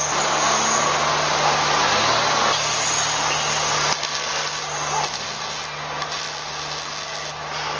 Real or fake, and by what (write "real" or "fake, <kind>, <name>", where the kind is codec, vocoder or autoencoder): real